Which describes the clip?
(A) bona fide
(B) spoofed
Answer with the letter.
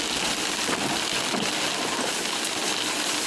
A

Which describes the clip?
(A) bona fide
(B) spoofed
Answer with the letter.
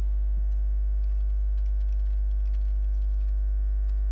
A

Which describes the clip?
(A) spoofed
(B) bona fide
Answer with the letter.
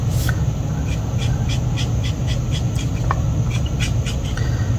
B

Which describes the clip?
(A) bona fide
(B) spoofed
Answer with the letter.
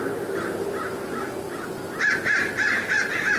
A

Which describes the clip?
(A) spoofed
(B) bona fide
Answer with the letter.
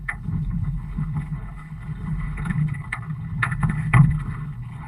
A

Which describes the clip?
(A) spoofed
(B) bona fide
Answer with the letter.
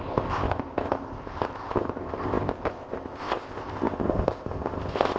A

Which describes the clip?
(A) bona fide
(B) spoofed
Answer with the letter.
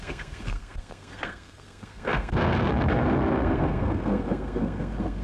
B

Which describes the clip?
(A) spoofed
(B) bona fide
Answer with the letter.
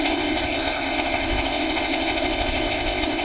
A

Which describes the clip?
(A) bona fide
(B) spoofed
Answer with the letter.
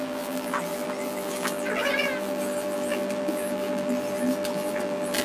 B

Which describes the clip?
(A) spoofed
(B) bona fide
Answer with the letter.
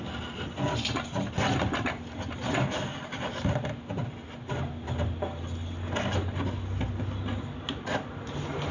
B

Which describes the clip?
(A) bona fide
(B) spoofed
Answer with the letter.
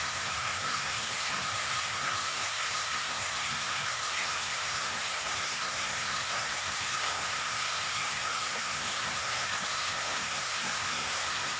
B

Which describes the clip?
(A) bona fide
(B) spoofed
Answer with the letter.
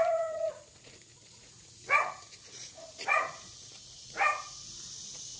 B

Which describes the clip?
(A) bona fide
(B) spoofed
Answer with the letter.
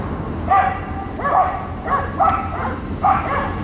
A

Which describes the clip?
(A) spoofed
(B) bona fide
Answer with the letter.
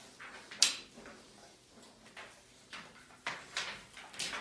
B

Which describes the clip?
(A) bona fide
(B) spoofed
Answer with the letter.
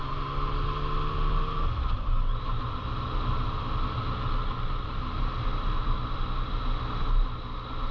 A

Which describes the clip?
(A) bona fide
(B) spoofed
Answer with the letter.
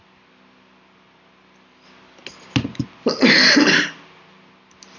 A